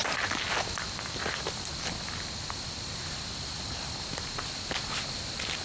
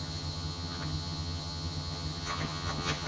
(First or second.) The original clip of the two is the first